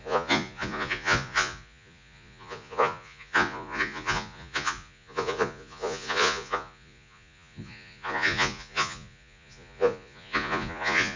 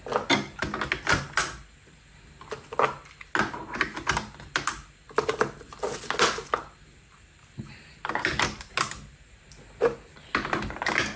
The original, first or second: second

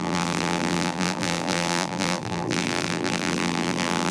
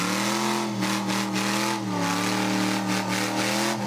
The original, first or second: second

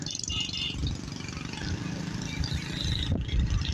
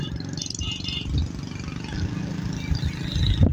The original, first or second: second